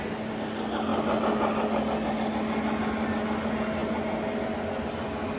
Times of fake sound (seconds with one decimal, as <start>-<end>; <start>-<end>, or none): none